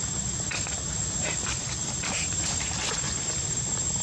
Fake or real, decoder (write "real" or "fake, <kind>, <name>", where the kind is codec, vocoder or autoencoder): fake, vocoder, BigVGAN v2